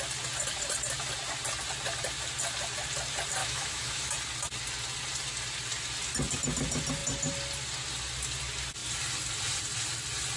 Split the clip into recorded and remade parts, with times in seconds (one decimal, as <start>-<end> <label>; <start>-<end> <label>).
0.0-3.4 recorded; 3.4-4.1 remade; 4.1-10.4 recorded